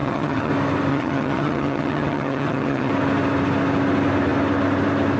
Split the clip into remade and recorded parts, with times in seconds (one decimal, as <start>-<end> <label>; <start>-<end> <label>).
0.0-0.5 remade; 0.5-0.9 recorded; 0.9-2.9 remade; 2.9-5.2 recorded